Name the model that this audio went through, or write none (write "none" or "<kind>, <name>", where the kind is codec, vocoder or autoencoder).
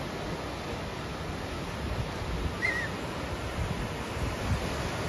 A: none